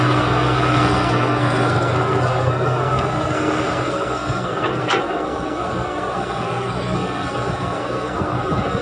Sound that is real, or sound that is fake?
fake